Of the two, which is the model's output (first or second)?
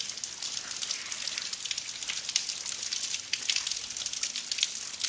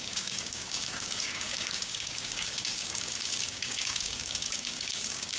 second